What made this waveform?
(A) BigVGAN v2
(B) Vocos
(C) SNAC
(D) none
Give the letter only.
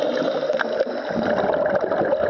D